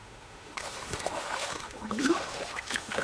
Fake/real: fake